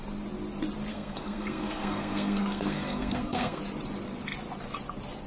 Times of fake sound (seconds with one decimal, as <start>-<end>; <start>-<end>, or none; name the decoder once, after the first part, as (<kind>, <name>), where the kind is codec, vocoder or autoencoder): 0.9-3.6 (codec, SNAC)